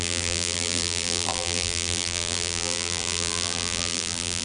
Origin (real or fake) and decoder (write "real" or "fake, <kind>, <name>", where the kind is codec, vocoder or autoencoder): fake, vocoder, BigVGAN v2